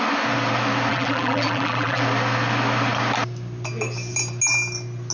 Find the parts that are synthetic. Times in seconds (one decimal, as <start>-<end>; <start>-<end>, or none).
0.9-2.0